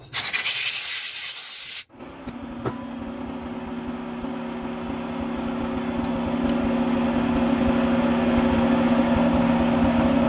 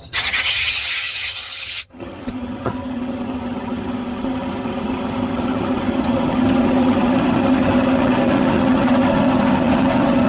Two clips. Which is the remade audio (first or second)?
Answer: second